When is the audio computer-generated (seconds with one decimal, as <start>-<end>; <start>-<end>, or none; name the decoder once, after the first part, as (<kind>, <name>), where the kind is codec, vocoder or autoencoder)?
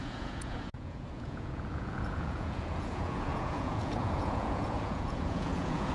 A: 0.0-5.9 (vocoder, Vocos)